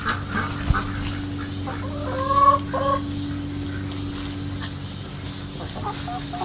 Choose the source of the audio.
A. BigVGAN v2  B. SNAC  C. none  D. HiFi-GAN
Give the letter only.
C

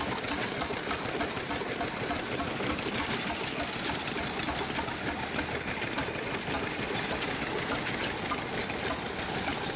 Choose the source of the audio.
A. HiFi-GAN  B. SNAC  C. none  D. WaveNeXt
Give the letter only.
C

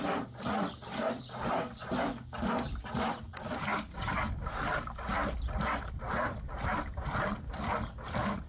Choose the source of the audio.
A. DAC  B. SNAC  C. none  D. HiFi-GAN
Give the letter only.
C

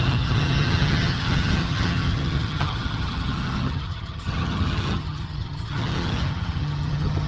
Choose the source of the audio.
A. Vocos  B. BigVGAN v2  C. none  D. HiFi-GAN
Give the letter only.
D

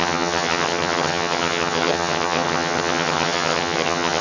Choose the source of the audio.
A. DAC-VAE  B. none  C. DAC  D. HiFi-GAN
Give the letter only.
D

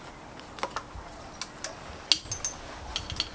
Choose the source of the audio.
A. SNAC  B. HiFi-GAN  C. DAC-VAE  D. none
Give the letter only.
D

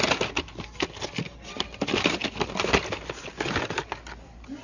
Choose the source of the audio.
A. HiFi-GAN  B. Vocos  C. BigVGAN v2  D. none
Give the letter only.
D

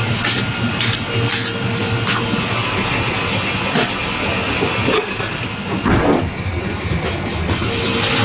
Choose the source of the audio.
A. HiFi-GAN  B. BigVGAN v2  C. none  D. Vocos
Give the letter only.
C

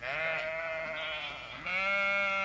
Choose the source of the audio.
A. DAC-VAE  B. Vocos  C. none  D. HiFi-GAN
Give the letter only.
C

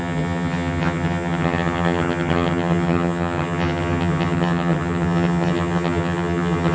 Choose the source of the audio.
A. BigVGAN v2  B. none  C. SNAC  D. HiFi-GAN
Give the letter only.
D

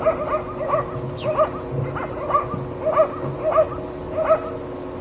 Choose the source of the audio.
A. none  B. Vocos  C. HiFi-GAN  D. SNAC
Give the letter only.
A